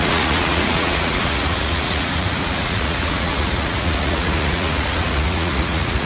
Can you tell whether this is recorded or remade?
remade